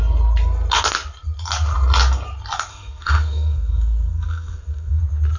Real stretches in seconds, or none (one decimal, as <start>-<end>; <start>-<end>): 0.0-2.7; 5.0-5.4